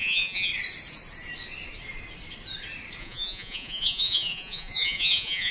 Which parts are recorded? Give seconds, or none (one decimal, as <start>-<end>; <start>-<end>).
0.5-3.0